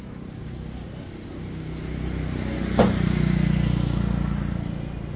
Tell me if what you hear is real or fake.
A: real